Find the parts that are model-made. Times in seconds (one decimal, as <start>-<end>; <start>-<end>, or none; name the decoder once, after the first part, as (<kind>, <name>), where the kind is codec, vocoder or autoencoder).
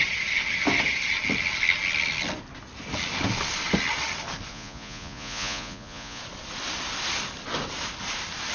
4.5-6.2 (vocoder, Vocos)